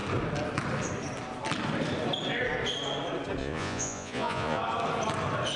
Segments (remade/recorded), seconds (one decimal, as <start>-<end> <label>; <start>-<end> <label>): 0.0-3.4 recorded; 3.4-4.6 remade; 4.6-5.6 recorded